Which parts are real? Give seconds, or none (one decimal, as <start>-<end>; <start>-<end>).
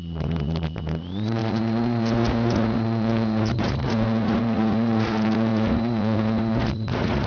none